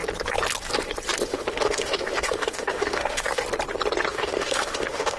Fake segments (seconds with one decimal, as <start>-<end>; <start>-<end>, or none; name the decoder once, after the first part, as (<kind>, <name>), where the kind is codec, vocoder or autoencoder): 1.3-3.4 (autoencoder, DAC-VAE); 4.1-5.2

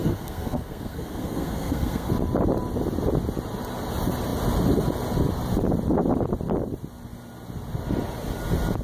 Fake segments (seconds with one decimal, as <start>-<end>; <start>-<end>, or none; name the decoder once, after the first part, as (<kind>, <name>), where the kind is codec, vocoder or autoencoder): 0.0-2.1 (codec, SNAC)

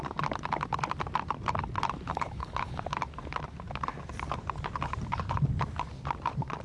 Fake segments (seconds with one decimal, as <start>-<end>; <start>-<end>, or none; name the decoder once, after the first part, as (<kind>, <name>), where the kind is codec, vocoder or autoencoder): 2.1-2.8 (codec, HILCodec)

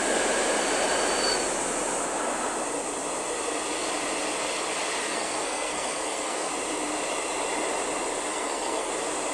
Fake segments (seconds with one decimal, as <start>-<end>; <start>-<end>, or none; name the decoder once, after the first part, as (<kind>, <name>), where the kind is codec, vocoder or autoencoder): 5.1-6.5 (codec, SNAC); 8.3-8.9